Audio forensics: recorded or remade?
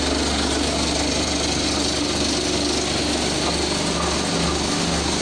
recorded